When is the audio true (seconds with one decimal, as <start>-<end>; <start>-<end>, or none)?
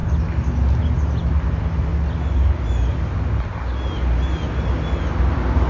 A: 0.0-1.3; 1.9-5.3